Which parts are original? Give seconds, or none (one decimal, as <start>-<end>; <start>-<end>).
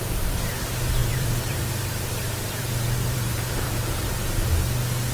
0.0-1.0; 3.9-5.1